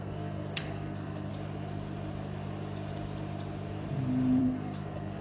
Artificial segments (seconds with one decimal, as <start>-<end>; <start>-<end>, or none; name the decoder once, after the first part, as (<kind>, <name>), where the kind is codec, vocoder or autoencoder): 0.0-1.3 (codec, SNAC); 4.4-5.2